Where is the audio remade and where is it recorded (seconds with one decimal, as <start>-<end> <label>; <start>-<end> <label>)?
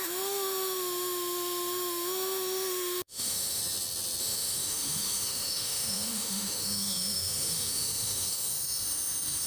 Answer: 0.0-3.6 remade; 3.6-4.2 recorded; 4.2-9.5 remade